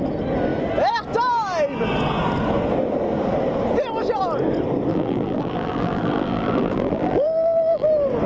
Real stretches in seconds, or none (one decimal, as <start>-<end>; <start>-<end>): 0.0-4.9; 7.9-8.3